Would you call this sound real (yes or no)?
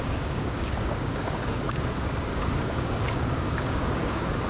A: no